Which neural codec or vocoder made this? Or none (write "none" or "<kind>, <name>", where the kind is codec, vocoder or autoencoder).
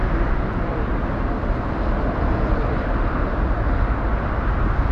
none